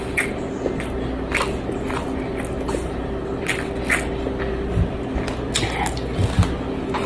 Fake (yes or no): no